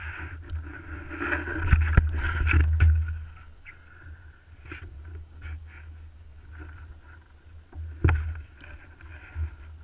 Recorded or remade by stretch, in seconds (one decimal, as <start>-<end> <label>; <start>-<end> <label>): 0.0-2.6 recorded; 2.6-3.7 remade; 3.7-5.1 recorded; 5.1-6.5 remade; 6.5-9.8 recorded